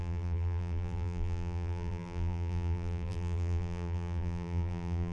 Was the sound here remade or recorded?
remade